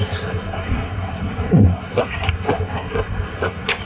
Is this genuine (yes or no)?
no